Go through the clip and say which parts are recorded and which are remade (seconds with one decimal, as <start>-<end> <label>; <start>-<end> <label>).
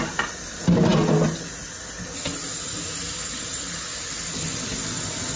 0.0-5.4 recorded